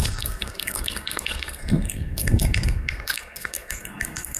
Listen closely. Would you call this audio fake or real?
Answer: fake